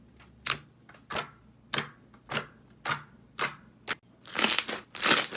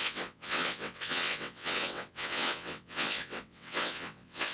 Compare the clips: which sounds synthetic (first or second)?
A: second